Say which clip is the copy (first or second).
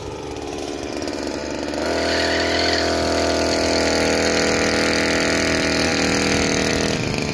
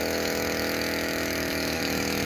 second